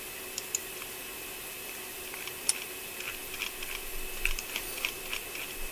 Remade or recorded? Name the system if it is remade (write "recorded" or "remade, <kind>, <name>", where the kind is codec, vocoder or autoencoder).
recorded